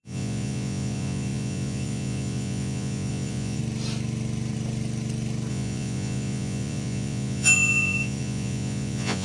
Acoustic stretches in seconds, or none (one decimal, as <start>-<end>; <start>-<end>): 3.6-5.5